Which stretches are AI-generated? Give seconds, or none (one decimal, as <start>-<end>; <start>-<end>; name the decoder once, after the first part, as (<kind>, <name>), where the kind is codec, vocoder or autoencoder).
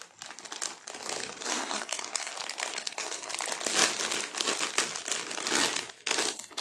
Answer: 1.2-2.3 (codec, SNAC); 2.7-3.3